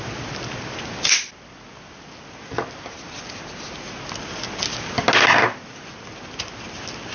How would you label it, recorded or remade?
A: recorded